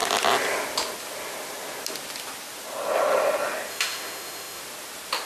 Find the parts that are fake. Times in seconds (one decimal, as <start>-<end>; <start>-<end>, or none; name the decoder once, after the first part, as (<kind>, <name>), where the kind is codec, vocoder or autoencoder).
3.7-4.6 (autoencoder, DAC-VAE)